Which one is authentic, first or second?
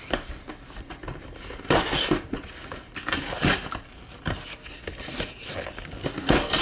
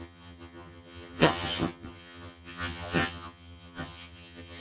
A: first